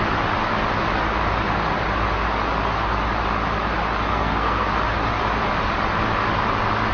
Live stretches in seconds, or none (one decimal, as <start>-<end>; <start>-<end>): 0.0-4.1; 4.7-6.9